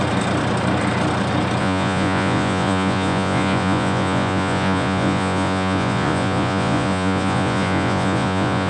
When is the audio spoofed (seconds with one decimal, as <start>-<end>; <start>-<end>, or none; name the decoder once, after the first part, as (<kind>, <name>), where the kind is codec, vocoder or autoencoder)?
1.6-8.7 (vocoder, Vocos)